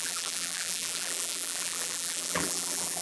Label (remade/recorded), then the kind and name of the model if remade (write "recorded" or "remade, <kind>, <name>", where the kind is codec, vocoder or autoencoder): remade, vocoder, BigVGAN v2